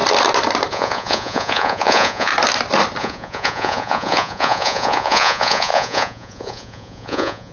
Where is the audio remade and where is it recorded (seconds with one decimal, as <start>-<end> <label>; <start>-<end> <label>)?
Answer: 0.0-0.7 recorded; 0.7-2.3 remade; 2.3-3.0 recorded; 3.0-7.5 remade